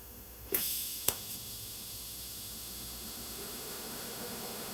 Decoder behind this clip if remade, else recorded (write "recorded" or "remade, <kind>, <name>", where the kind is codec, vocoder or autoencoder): remade, autoencoder, DAC-VAE